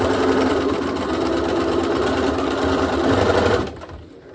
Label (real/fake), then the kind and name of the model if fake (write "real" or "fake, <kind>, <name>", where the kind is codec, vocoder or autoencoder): real